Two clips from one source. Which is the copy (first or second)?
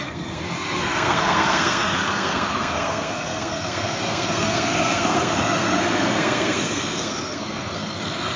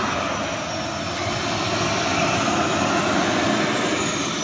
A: first